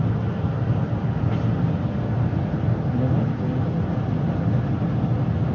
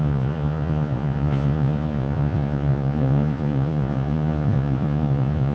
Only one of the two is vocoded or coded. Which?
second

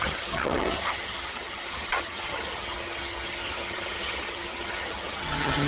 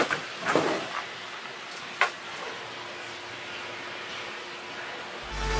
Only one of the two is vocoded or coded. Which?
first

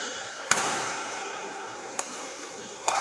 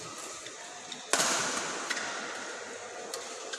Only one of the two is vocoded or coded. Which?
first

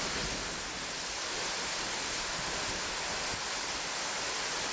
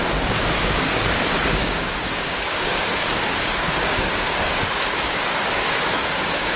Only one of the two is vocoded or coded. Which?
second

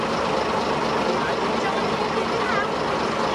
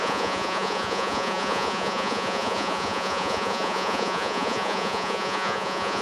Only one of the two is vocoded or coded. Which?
second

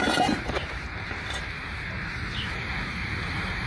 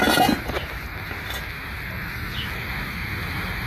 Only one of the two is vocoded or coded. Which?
first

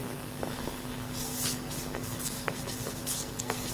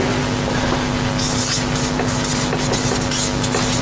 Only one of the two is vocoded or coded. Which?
first